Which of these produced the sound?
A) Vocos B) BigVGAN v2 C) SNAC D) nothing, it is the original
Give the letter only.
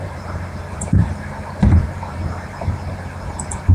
B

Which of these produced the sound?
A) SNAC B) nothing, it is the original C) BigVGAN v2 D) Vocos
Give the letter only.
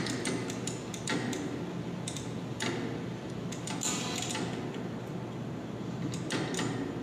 B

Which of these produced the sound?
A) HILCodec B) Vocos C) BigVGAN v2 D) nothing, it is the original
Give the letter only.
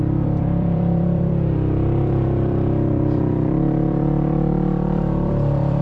C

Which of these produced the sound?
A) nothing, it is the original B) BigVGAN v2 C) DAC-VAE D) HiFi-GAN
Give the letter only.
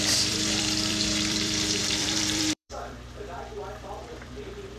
B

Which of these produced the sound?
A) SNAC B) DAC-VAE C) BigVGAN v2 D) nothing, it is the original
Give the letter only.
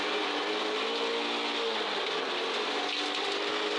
D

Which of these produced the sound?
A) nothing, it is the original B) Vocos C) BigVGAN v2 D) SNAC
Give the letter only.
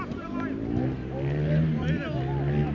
A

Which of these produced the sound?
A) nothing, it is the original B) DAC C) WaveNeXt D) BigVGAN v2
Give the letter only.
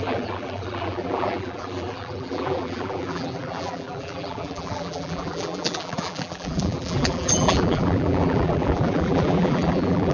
D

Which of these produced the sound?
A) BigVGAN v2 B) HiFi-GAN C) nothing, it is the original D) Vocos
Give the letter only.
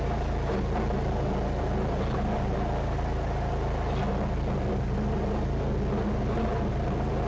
C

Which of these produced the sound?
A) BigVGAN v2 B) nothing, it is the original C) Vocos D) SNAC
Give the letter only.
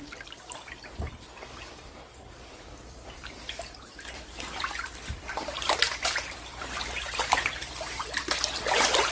A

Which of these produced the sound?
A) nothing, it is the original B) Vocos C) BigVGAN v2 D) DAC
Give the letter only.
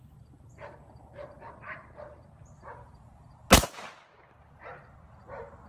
A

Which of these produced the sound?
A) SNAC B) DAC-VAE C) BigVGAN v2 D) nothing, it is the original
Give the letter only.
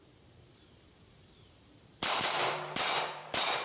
C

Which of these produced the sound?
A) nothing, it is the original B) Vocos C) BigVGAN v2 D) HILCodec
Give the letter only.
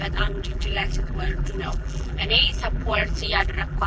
C